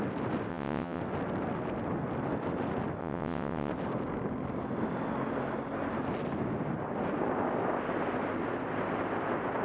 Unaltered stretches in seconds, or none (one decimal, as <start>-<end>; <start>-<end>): 0.0-0.5; 1.0-3.0; 3.7-9.6